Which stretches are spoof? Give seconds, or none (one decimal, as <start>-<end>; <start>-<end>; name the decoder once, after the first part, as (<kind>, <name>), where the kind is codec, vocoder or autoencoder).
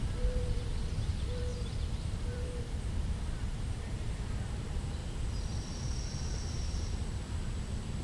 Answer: 0.0-5.0 (vocoder, BigVGAN v2); 6.7-8.0